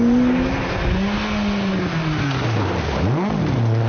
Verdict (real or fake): real